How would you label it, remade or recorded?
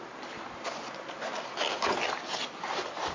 recorded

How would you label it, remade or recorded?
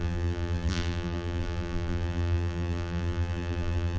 remade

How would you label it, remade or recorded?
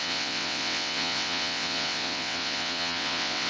remade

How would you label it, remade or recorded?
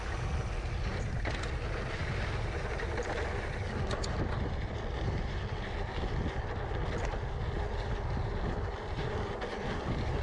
recorded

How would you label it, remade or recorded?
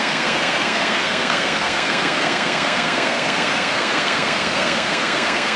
remade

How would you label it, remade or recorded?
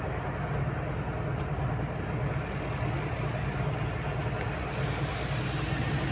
recorded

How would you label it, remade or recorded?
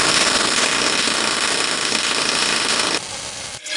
recorded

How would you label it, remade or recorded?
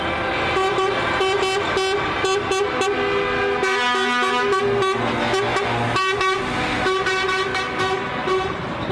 recorded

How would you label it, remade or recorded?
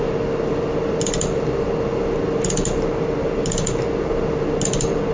recorded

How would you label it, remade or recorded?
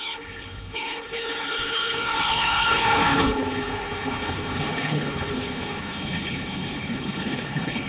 remade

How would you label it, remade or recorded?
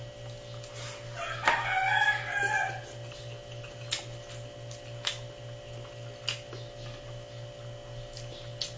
recorded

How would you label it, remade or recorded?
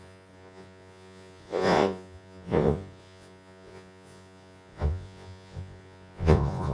remade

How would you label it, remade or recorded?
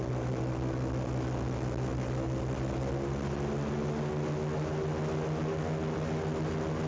recorded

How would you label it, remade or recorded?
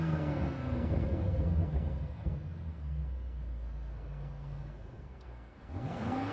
remade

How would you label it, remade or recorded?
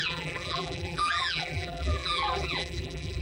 remade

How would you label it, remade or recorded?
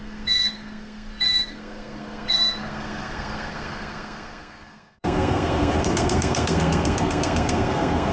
remade